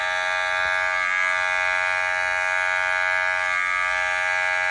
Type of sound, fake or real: real